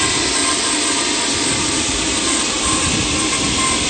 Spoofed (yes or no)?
no